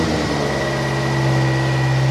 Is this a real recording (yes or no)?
yes